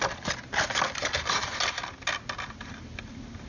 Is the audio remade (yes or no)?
no